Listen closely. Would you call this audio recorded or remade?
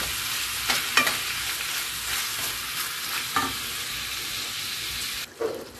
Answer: recorded